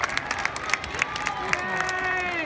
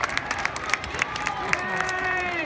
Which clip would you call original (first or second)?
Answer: first